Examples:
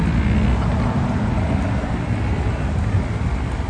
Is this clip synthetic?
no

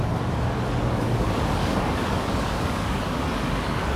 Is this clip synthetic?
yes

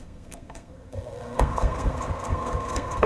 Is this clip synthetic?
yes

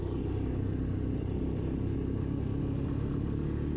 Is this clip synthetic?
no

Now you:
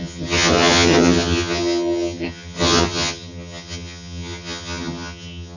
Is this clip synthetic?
yes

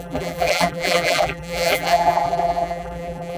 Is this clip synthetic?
yes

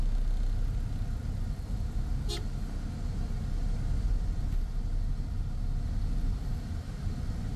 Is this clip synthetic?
no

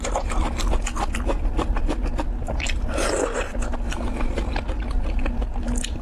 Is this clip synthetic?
no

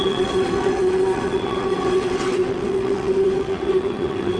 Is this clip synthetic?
yes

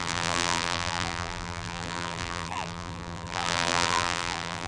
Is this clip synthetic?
yes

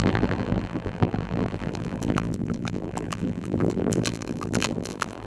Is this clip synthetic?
yes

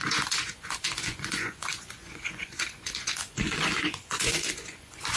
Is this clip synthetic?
yes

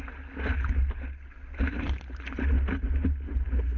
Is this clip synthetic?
no